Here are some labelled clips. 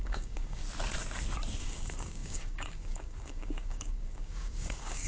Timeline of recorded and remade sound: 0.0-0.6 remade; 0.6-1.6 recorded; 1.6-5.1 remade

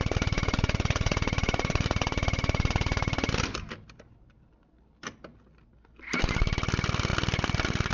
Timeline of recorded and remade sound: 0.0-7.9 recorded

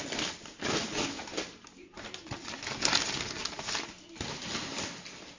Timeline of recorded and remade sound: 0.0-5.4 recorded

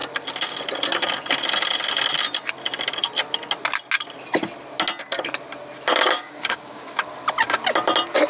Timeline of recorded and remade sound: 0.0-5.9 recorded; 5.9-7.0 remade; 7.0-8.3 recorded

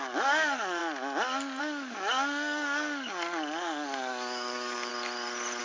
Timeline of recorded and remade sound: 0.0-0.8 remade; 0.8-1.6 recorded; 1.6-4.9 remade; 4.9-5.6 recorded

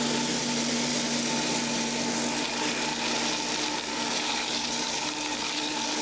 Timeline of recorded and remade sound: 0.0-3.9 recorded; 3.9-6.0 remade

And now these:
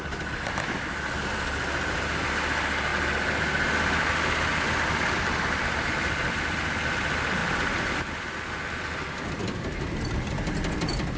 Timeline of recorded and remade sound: 0.0-11.2 recorded

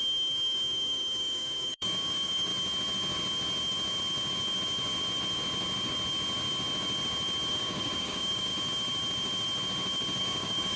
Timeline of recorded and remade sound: 0.0-2.5 remade; 2.5-7.5 recorded; 7.5-8.5 remade; 8.5-10.2 recorded; 10.2-10.8 remade